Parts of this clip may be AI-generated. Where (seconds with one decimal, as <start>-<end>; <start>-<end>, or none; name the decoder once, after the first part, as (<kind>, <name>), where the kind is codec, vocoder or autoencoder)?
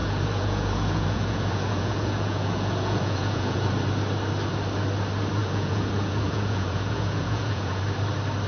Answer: 0.0-3.7 (vocoder, Vocos); 5.4-7.8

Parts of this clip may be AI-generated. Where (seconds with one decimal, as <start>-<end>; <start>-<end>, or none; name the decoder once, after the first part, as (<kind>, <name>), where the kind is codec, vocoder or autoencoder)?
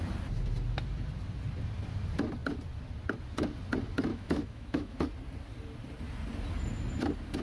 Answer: 4.1-5.0 (autoencoder, DAC-VAE)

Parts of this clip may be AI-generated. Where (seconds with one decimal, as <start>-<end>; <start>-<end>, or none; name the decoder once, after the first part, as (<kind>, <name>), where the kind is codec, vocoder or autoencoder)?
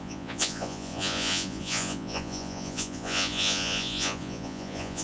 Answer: 0.0-5.0 (vocoder, Vocos)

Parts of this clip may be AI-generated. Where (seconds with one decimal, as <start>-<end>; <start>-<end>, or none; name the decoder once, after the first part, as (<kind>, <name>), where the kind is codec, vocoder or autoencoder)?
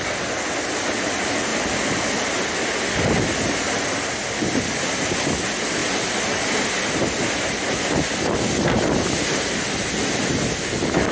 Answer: none